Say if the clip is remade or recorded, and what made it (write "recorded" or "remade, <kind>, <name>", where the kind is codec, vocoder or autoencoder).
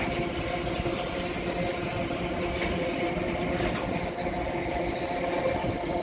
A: recorded